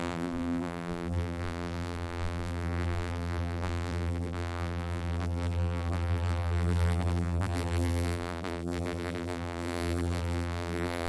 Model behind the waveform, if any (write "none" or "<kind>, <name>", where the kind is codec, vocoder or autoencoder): vocoder, BigVGAN v2